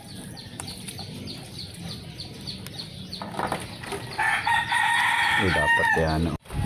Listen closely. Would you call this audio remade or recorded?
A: recorded